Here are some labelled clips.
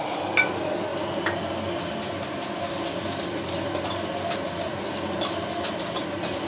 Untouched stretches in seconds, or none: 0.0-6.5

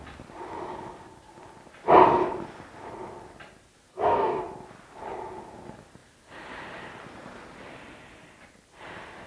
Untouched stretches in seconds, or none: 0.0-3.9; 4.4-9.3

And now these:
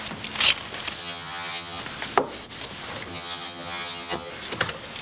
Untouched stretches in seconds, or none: 0.0-1.0; 1.8-3.1; 4.3-5.0

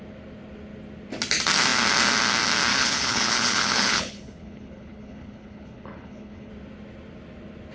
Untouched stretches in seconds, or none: 0.0-2.7; 6.5-7.7

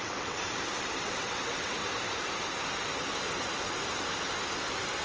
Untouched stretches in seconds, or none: 0.4-1.0; 1.8-5.0